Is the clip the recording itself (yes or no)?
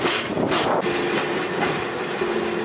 yes